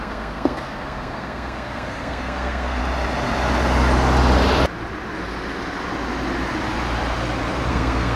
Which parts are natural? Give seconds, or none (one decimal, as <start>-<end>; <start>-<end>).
2.8-7.7